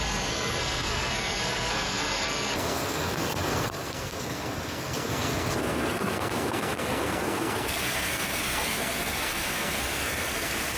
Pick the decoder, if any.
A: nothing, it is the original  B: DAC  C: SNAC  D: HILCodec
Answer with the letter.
C